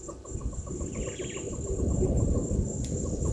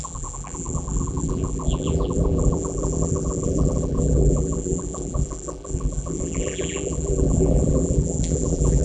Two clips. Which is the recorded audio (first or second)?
first